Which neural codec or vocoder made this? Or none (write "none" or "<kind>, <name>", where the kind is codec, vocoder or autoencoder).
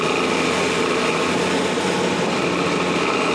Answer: none